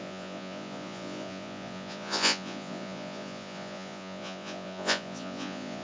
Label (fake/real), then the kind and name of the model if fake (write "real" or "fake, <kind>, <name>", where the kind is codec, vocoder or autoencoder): fake, vocoder, Vocos